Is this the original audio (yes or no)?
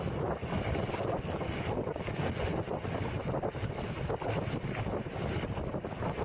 yes